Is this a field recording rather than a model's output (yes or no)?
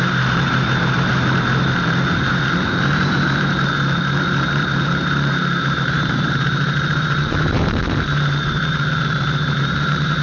no